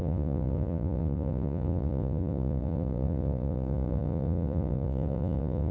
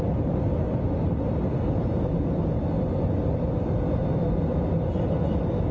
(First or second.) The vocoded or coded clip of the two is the first